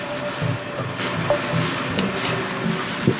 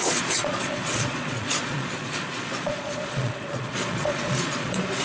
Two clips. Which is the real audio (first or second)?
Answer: first